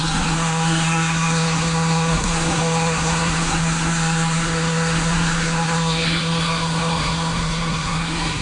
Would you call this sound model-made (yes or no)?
yes